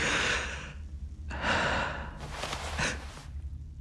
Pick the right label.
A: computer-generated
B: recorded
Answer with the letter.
B